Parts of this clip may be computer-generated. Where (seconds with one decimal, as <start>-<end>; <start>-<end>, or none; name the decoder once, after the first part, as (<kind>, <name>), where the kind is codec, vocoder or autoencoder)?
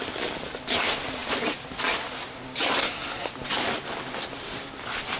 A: 2.8-3.3 (codec, SNAC)